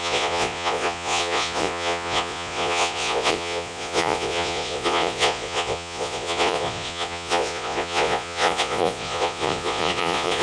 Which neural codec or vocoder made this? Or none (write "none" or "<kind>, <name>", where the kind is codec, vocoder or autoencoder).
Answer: vocoder, Vocos